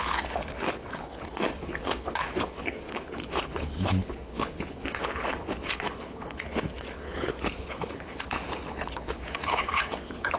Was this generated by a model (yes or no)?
yes